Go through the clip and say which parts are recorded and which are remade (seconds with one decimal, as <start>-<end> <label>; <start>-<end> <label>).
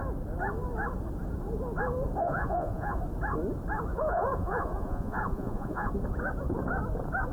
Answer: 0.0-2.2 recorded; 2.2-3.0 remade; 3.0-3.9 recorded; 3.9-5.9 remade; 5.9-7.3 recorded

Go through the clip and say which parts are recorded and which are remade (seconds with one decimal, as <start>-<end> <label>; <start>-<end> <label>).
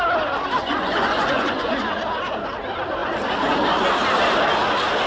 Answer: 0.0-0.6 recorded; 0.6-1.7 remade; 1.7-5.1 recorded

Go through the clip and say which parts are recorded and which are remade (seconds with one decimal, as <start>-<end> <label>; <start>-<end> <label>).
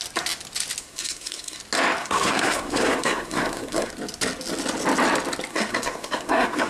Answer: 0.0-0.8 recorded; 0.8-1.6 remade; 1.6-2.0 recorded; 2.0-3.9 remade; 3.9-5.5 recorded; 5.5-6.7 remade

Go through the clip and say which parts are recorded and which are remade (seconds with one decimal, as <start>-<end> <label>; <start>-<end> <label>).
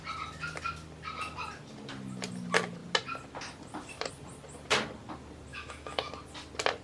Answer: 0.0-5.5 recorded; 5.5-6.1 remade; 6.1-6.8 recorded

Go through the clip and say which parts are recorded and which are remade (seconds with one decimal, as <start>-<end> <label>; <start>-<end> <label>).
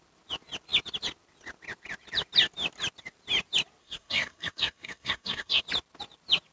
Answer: 0.0-3.8 recorded; 3.8-5.6 remade; 5.6-6.5 recorded